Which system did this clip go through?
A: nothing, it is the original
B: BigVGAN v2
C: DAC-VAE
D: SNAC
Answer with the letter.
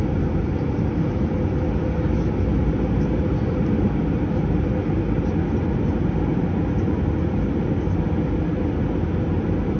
A